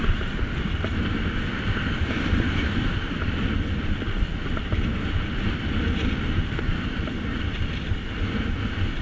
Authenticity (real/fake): real